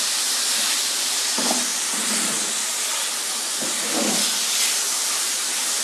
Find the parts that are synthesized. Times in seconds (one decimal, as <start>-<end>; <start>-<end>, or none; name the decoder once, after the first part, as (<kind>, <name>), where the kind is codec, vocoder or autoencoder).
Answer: 0.0-1.7 (vocoder, BigVGAN v2); 5.2-5.8